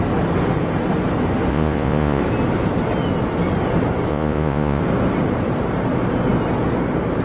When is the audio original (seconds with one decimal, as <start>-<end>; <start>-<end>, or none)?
0.0-1.5; 2.2-4.1; 4.8-7.2